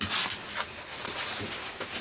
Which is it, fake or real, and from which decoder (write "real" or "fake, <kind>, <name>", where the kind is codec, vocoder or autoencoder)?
real